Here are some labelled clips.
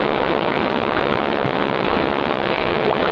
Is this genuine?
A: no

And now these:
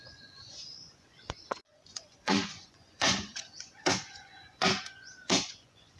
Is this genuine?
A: no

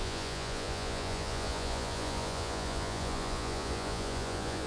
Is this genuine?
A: no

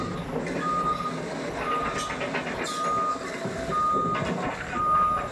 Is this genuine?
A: yes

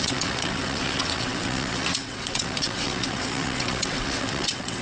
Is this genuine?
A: no